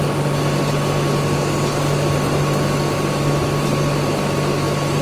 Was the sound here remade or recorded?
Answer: recorded